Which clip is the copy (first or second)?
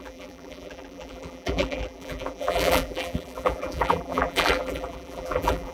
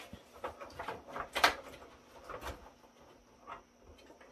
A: first